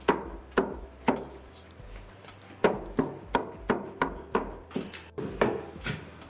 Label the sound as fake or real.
real